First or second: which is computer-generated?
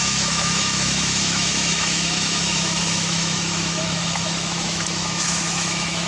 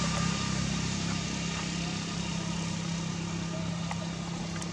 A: first